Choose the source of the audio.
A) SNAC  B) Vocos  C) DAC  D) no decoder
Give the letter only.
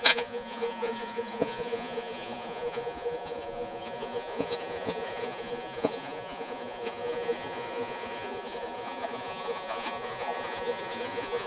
B